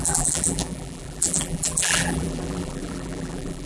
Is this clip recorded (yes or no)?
no